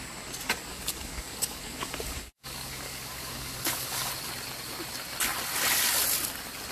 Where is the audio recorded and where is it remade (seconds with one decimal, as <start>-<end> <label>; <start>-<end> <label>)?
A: 0.0-0.7 recorded; 0.7-4.1 remade; 4.1-6.7 recorded

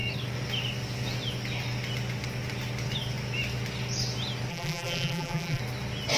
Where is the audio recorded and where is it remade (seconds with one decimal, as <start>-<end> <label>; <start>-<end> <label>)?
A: 0.0-4.5 recorded; 4.5-5.6 remade; 5.6-6.2 recorded

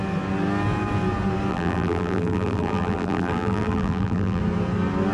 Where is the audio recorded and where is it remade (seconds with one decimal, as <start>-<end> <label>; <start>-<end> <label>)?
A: 0.0-1.5 recorded; 1.5-4.4 remade; 4.4-5.1 recorded

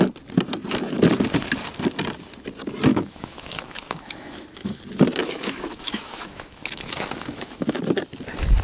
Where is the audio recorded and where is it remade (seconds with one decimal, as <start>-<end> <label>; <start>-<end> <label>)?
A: 0.0-2.9 recorded; 2.9-4.8 remade; 4.8-5.2 recorded; 5.2-7.8 remade; 7.8-8.6 recorded

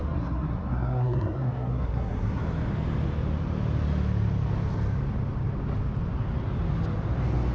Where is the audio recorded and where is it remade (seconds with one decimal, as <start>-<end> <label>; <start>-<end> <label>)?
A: 0.0-2.4 remade; 2.4-7.5 recorded

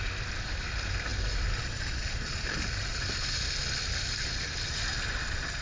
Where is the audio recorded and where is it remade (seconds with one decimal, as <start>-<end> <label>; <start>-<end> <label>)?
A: 0.0-5.6 recorded

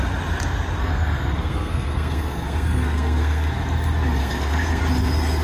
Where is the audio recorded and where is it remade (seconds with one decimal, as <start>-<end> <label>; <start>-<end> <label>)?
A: 0.0-0.8 recorded; 0.8-3.5 remade; 3.5-4.2 recorded; 4.2-4.8 remade; 4.8-5.4 recorded